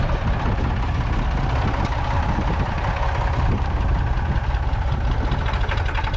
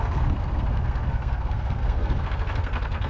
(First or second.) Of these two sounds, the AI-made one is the second